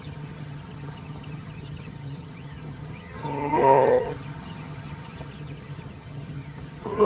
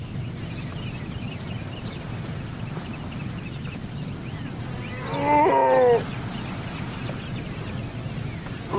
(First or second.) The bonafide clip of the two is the second